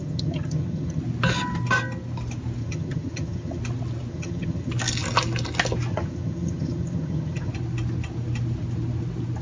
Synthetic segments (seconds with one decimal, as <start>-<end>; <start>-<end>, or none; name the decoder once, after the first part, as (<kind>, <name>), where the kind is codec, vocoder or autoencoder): 0.0-1.0 (vocoder, HiFi-GAN); 2.6-3.6; 4.1-4.7; 5.9-7.5